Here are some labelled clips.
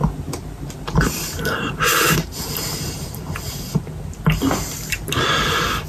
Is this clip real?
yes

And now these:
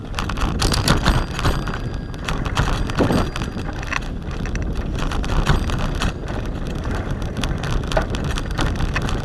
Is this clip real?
yes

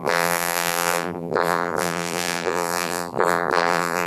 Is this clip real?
no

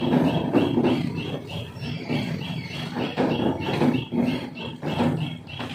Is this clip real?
no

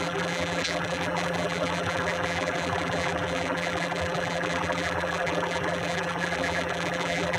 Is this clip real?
no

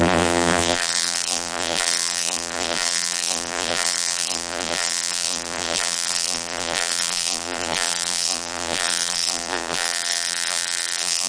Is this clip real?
no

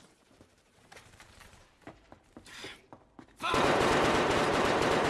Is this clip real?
no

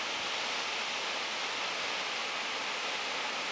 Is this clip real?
yes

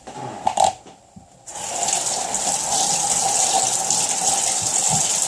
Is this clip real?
yes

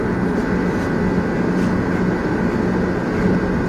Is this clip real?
yes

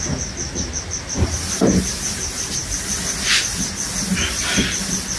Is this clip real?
yes